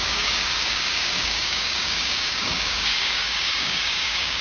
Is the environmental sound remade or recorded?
remade